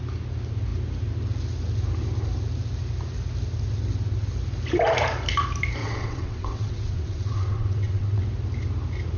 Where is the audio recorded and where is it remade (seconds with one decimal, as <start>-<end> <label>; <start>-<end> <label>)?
0.0-5.8 recorded; 5.8-8.2 remade; 8.2-9.2 recorded